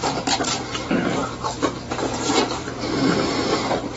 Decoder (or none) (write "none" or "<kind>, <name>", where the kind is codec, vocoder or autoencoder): none